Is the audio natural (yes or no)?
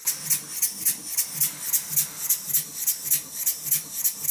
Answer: yes